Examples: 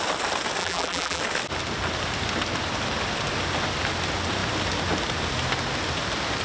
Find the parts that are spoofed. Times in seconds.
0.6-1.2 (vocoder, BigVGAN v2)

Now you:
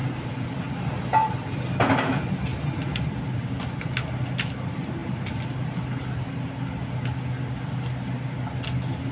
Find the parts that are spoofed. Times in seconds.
0.0-0.7 (vocoder, BigVGAN v2)

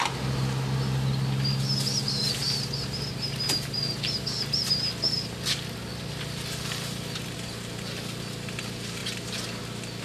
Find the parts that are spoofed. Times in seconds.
none

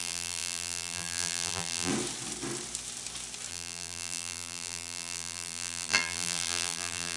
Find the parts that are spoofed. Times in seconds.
0.0-1.9 (vocoder, BigVGAN v2); 3.5-7.2

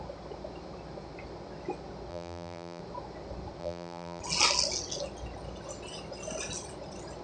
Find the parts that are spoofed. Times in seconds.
2.1-2.8 (vocoder, BigVGAN v2); 3.6-4.2